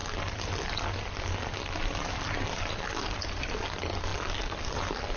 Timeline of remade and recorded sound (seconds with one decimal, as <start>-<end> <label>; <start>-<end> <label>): 0.0-5.2 recorded